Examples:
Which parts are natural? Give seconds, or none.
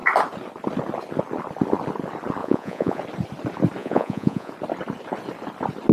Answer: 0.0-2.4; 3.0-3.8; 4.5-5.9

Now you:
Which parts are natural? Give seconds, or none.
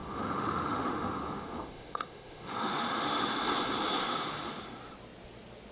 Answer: 3.4-4.1; 4.6-5.7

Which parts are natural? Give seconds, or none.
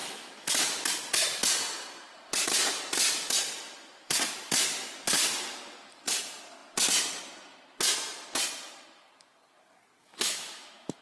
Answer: 0.6-10.0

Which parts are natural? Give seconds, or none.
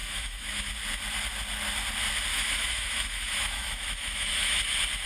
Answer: 0.7-2.3; 4.6-5.1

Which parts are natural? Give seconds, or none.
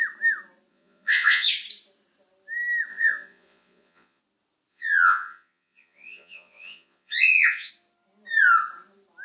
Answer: 0.0-0.7; 1.5-2.9; 4.2-4.7; 7.7-9.2